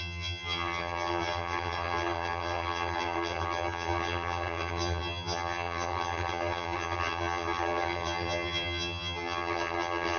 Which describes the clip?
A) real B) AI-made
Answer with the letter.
B